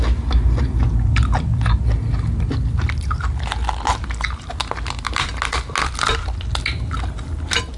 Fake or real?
real